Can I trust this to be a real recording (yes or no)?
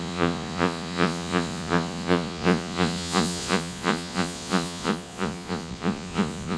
no